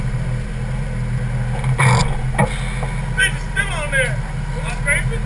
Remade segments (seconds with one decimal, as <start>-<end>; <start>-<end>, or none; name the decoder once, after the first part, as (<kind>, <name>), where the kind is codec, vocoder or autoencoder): none